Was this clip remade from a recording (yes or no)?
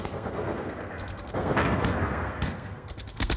yes